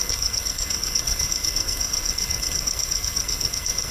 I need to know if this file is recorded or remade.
remade